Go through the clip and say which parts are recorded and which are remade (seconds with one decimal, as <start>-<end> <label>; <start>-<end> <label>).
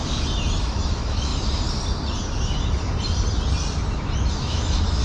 0.0-0.6 recorded; 0.6-1.3 remade; 1.3-4.3 recorded; 4.3-5.0 remade